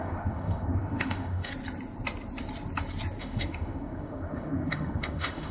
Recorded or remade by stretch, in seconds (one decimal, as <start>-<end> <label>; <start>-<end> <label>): 0.0-1.5 remade; 1.5-3.2 recorded; 3.2-5.5 remade